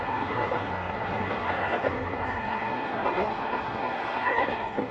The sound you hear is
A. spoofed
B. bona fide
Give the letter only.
A